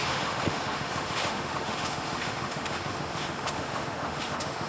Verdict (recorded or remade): remade